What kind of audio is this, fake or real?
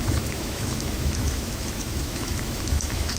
fake